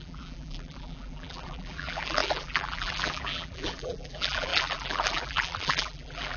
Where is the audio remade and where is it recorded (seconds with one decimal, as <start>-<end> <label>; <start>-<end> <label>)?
0.0-6.4 remade